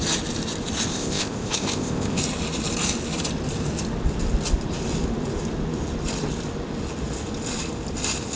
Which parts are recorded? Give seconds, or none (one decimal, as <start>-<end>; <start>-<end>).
0.0-0.9; 2.2-8.4